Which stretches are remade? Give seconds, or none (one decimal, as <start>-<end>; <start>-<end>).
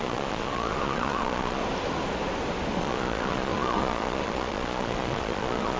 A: 0.0-1.6; 2.8-5.8